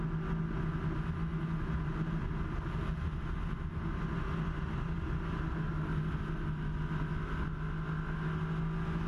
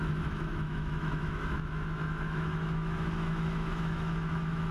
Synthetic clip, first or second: second